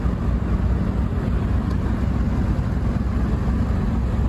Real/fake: real